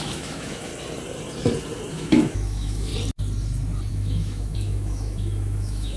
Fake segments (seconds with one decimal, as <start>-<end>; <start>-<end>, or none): 0.0-0.7; 1.9-2.9; 3.9-6.0